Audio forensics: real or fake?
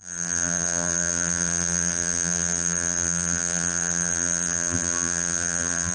fake